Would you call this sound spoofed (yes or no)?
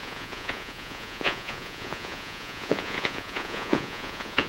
yes